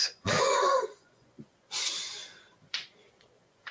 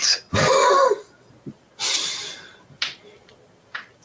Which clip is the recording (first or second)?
second